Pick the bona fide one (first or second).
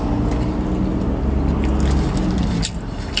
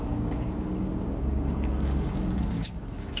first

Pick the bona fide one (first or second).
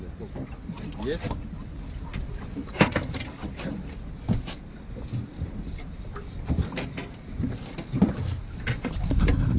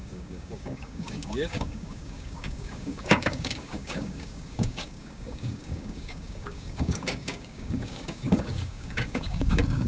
first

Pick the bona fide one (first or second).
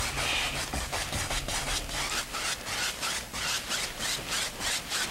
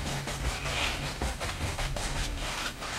first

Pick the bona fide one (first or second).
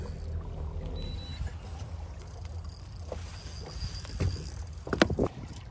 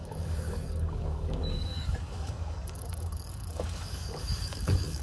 first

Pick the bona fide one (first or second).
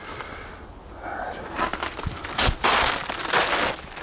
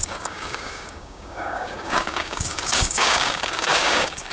first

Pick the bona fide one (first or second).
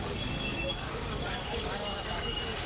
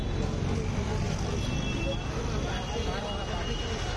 second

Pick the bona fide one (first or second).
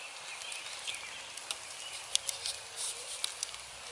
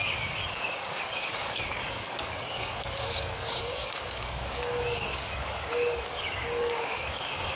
first